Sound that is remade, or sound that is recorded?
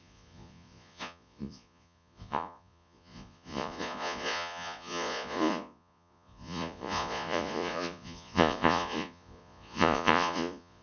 remade